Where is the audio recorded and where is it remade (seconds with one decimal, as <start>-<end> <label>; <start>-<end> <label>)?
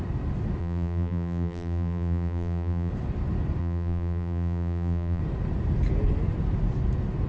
0.0-0.6 recorded; 0.6-2.9 remade; 2.9-3.6 recorded; 3.6-5.2 remade; 5.2-7.3 recorded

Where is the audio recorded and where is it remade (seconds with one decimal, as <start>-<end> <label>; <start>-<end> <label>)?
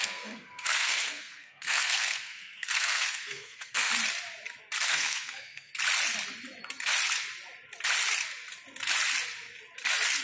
0.0-3.9 remade; 3.9-4.9 recorded; 4.9-5.7 remade; 5.7-10.2 recorded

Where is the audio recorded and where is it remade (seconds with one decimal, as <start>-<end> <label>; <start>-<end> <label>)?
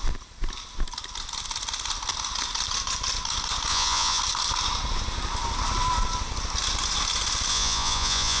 0.0-3.7 recorded; 3.7-4.2 remade; 4.2-7.5 recorded; 7.5-8.4 remade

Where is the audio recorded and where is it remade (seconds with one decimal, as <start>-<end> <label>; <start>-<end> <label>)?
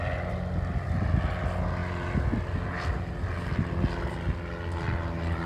0.0-5.5 recorded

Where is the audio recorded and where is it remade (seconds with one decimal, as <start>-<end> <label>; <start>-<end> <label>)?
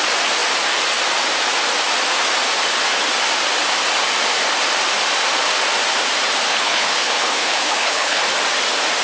0.0-6.5 recorded; 6.5-8.2 remade; 8.2-9.0 recorded